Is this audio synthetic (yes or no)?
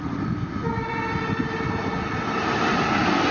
no